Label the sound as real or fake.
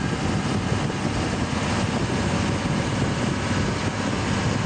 real